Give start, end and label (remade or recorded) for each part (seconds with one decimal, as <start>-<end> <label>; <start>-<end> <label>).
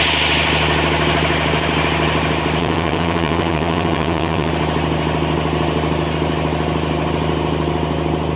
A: 0.0-2.6 recorded; 2.6-4.5 remade; 4.5-8.4 recorded